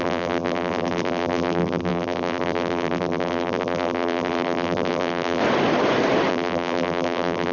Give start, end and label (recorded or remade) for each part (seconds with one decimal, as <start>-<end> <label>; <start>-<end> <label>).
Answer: 0.0-5.4 remade; 5.4-6.3 recorded; 6.3-7.5 remade